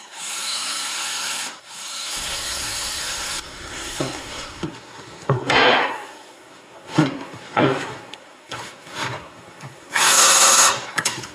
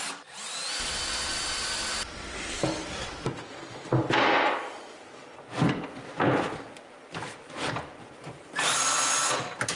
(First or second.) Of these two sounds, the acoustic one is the second